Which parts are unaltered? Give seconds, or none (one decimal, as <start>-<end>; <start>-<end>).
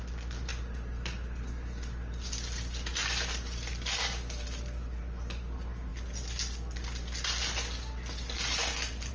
0.0-9.1